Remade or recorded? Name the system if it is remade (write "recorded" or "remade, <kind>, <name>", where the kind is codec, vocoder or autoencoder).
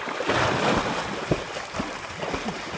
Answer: recorded